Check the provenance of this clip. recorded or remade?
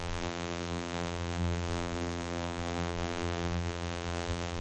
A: remade